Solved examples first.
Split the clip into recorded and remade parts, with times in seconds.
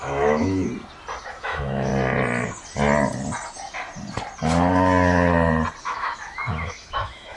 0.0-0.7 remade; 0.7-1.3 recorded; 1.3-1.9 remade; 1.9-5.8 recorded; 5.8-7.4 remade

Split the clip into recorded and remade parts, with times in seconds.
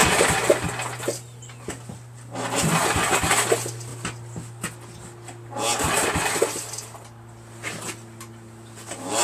0.0-9.2 recorded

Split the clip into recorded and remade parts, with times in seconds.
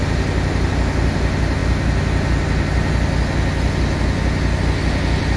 0.0-5.4 recorded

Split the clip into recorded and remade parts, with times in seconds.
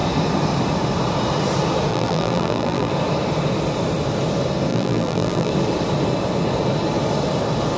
0.0-1.9 recorded; 1.9-2.9 remade; 2.9-4.7 recorded; 4.7-5.5 remade; 5.5-7.8 recorded